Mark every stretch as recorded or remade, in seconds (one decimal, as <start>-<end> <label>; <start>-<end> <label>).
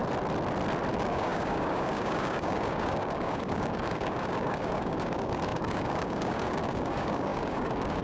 0.0-0.9 recorded; 0.9-8.0 remade